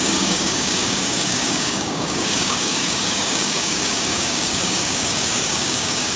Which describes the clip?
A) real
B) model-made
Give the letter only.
B